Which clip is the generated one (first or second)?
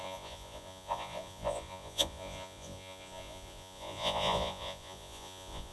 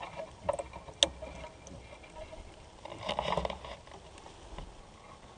first